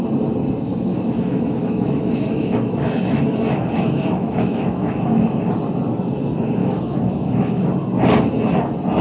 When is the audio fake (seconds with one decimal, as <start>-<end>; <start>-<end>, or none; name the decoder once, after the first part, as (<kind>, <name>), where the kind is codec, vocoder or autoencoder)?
0.7-5.4 (autoencoder, DAC-VAE); 6.6-7.7